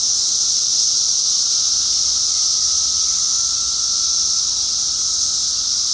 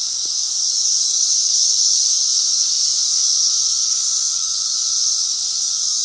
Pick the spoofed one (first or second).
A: second